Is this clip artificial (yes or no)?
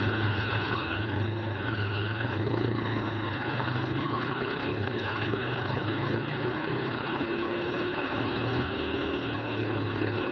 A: yes